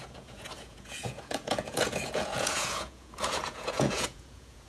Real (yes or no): no